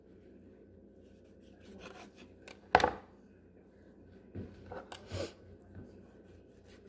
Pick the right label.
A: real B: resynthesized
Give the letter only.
A